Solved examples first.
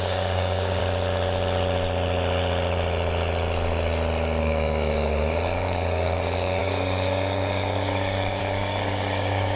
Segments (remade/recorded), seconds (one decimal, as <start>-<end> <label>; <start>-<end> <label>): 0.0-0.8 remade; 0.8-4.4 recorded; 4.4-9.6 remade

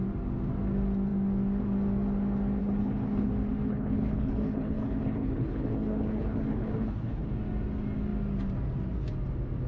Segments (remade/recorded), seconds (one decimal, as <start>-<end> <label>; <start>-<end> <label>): 0.0-2.6 recorded; 2.6-3.3 remade; 3.3-3.7 recorded; 3.7-7.3 remade; 7.3-9.7 recorded

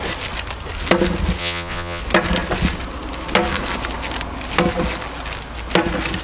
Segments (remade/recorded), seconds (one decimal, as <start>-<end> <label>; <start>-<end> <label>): 0.0-1.4 recorded; 1.4-2.0 remade; 2.0-6.2 recorded

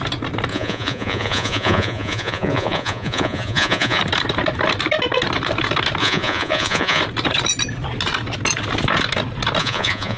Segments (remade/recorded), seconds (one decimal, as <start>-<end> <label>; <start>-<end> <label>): 0.0-0.5 recorded; 0.5-4.0 remade; 4.0-6.0 recorded; 6.0-7.0 remade; 7.0-9.6 recorded; 9.6-10.2 remade

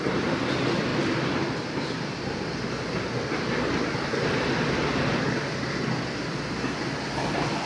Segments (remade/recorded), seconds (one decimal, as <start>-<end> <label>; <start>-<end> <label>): 0.0-0.9 recorded; 0.9-2.6 remade; 2.6-7.7 recorded

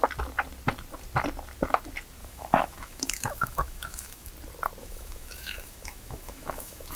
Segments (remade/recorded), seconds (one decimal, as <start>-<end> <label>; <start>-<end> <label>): 0.0-2.2 recorded; 2.2-4.3 remade; 4.3-4.8 recorded; 4.8-7.0 remade

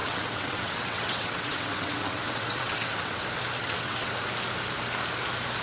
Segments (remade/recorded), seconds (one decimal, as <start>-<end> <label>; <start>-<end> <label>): 0.0-3.2 remade; 3.2-3.6 recorded; 3.6-4.1 remade; 4.1-5.6 recorded